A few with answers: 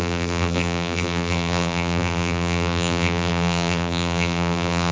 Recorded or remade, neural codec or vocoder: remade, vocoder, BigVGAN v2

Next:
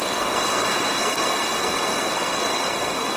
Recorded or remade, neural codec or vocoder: remade, codec, SNAC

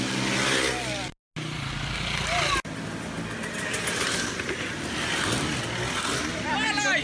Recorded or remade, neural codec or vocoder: recorded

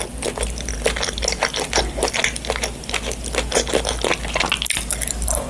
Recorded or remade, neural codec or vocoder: recorded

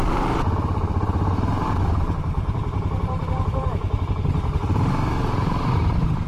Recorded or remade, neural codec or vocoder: remade, vocoder, BigVGAN v2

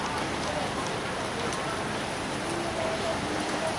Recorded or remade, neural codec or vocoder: recorded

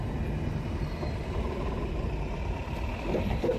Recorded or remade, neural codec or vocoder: recorded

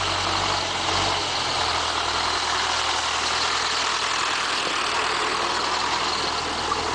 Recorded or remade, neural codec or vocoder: recorded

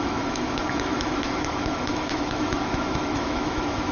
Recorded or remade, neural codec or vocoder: remade, autoencoder, DAC-VAE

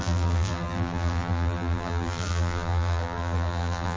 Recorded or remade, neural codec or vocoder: remade, vocoder, BigVGAN v2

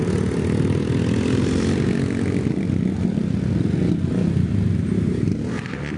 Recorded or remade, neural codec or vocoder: recorded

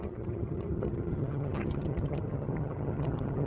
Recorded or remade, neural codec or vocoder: remade, vocoder, HiFi-GAN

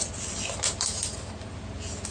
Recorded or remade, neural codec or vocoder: recorded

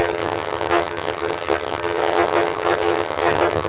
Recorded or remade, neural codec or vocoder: remade, vocoder, HiFi-GAN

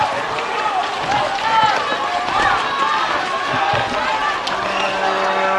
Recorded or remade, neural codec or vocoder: recorded